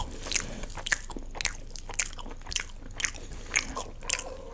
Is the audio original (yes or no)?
yes